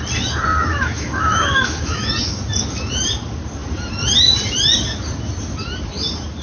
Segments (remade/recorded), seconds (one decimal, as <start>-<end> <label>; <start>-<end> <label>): 0.0-0.7 recorded; 0.7-2.1 remade; 2.1-6.4 recorded